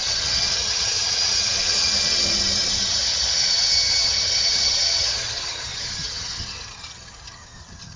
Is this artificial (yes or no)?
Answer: yes